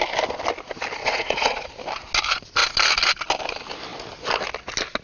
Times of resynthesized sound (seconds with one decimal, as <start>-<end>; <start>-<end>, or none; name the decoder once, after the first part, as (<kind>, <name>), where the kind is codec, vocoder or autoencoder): 1.0-1.7 (vocoder, Vocos)